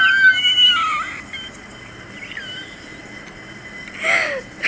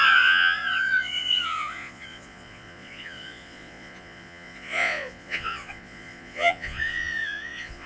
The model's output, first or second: second